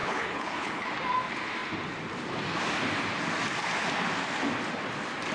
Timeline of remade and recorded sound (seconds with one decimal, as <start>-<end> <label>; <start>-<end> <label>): 0.0-0.9 remade; 0.9-5.3 recorded